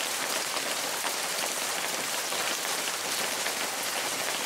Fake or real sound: real